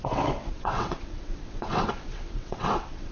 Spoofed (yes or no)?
yes